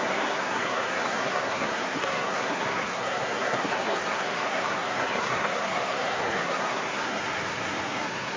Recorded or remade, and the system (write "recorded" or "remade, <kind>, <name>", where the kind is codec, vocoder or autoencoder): remade, codec, SNAC